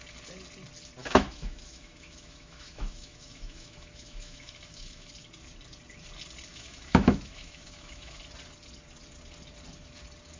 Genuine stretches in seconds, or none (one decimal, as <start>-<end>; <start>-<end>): 0.0-1.0; 5.1-6.5; 8.2-10.4